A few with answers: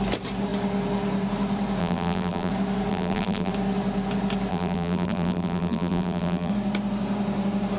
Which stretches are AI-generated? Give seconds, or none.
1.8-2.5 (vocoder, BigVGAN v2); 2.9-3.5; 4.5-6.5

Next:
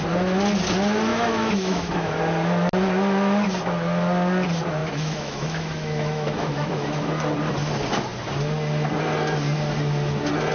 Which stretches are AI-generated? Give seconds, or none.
1.1-2.2 (autoencoder, DAC-VAE); 4.8-7.1

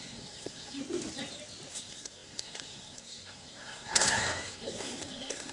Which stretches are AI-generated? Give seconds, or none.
0.0-0.8 (codec, SNAC); 1.7-5.5

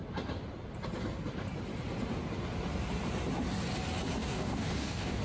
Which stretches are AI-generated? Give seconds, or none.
4.2-5.2 (codec, DAC)

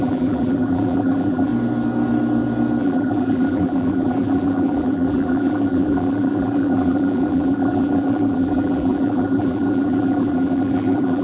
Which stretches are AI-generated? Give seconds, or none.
0.0-1.5 (vocoder, BigVGAN v2); 2.8-11.2